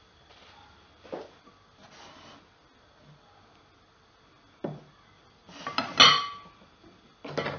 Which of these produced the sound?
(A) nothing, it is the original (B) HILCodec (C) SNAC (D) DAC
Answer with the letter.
A